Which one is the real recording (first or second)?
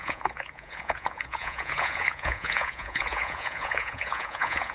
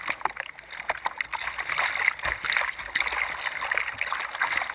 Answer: second